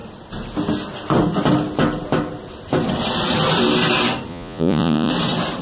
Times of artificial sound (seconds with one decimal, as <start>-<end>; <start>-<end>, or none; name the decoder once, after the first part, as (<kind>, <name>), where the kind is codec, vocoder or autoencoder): 4.3-5.1 (vocoder, Vocos)

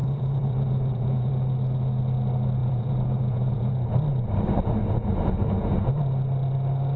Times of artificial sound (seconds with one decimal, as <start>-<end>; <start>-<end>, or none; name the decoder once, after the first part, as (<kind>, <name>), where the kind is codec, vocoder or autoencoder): 0.0-1.3 (vocoder, Vocos); 2.6-3.7; 4.8-5.9